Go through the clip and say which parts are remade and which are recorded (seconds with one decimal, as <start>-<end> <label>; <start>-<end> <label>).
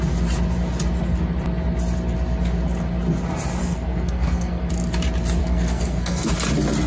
0.0-3.6 recorded; 3.6-4.7 remade; 4.7-5.4 recorded; 5.4-6.3 remade; 6.3-6.9 recorded